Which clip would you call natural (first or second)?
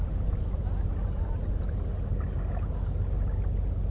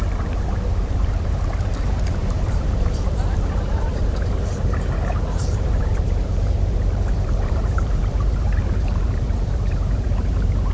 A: first